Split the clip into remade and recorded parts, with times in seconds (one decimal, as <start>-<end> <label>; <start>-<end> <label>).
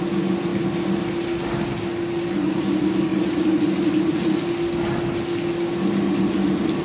0.0-6.8 recorded